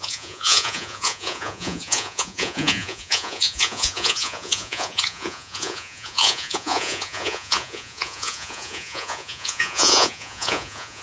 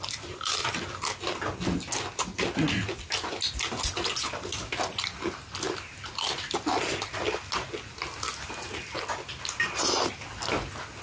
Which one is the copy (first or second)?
first